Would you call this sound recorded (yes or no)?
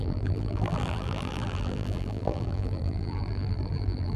no